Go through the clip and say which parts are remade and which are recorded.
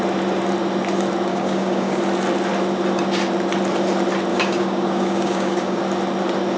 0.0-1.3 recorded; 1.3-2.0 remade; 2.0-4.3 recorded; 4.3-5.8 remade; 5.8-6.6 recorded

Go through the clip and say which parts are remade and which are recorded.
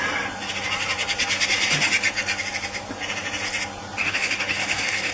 0.0-4.0 recorded; 4.0-5.1 remade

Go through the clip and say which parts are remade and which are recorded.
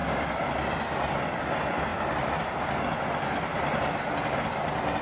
0.0-0.5 remade; 0.5-5.0 recorded